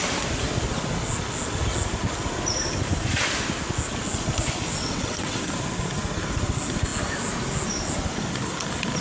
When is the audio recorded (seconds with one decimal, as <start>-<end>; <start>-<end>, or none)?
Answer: 0.0-4.8; 5.5-9.0